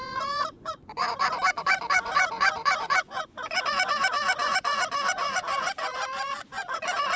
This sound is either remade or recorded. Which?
remade